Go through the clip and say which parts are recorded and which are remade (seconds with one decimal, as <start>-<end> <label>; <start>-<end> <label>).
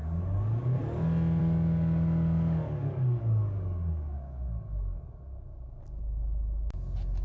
0.0-0.8 remade; 0.8-1.4 recorded; 1.4-5.0 remade; 5.0-7.2 recorded